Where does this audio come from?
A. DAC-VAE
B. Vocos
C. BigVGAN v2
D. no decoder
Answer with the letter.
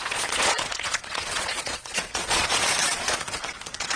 B